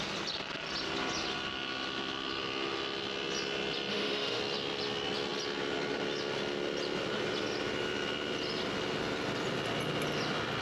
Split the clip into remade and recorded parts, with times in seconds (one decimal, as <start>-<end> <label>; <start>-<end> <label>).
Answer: 0.0-3.9 recorded; 3.9-4.4 remade; 4.4-10.6 recorded